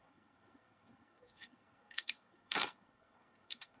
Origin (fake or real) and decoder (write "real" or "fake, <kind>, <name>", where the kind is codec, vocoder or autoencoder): fake, codec, SNAC